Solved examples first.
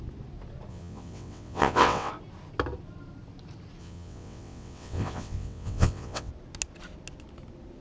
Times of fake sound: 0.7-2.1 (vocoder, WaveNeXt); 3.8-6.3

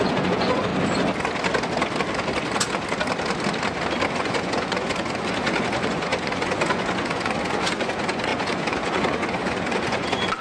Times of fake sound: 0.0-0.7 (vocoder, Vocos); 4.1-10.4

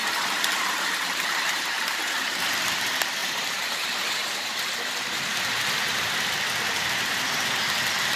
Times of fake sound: 0.0-2.4 (vocoder, BigVGAN v2); 3.2-5.5

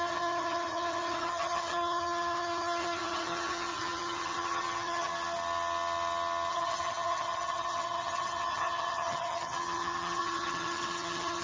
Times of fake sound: 0.0-5.1 (vocoder, HiFi-GAN); 6.5-11.4

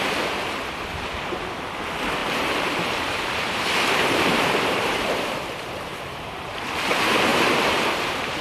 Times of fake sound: 2.2-6.4 (vocoder, BigVGAN v2); 7.3-8.4

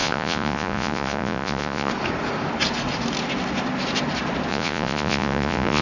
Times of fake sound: 0.0-1.9 (vocoder, Vocos); 4.5-5.8

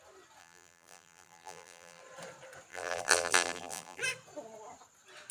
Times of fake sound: 0.4-2.0 (vocoder, BigVGAN v2); 2.7-4.0